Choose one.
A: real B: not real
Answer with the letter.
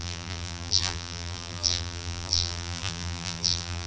B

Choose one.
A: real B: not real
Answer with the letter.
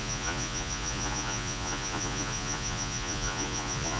B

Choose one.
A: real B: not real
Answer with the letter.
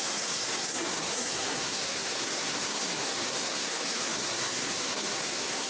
B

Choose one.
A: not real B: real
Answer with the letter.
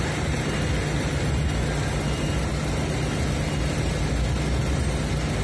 B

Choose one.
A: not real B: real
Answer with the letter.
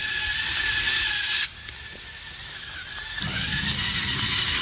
B